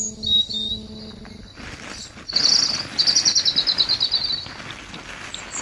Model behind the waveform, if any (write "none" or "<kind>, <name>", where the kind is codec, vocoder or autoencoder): none